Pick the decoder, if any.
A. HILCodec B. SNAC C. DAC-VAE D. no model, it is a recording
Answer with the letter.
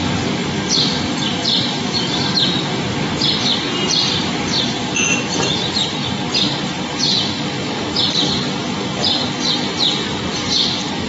D